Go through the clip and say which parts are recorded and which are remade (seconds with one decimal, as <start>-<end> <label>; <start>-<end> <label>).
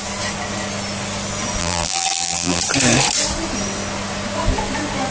0.0-1.6 recorded; 1.6-2.6 remade; 2.6-5.1 recorded